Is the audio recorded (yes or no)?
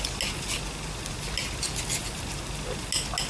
yes